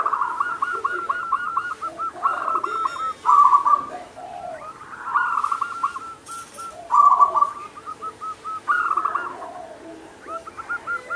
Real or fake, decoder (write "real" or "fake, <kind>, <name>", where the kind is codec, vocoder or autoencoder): real